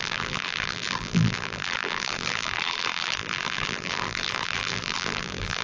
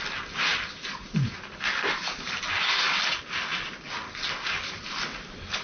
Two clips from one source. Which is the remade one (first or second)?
first